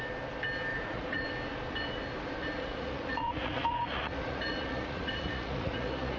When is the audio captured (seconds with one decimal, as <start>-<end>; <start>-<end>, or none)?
0.0-0.7; 1.3-2.4